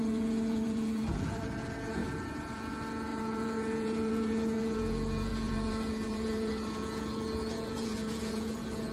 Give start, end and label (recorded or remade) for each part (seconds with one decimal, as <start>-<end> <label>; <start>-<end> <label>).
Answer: 0.0-8.9 remade